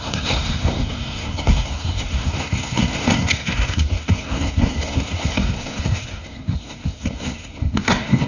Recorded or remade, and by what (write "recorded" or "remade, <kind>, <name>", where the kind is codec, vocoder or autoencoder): remade, codec, SNAC